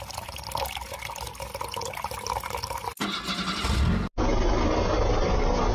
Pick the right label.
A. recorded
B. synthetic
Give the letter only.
A